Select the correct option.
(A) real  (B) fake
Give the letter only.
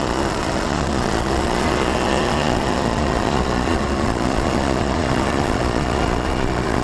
B